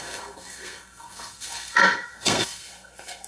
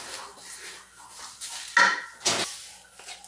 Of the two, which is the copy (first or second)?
first